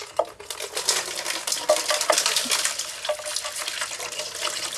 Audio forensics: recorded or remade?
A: recorded